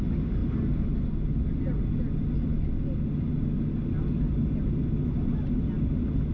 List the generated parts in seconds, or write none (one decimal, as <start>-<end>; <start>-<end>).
none

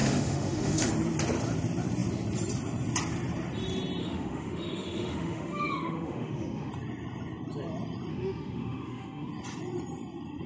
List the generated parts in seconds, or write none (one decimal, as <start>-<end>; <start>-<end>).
0.0-0.9; 4.0-6.7; 8.1-9.3

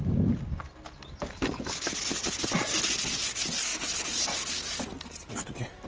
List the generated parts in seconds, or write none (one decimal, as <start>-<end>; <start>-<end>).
none